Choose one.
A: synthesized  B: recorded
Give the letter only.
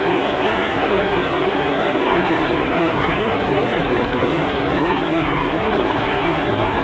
A